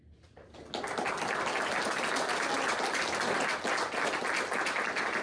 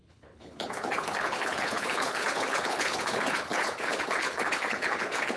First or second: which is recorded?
first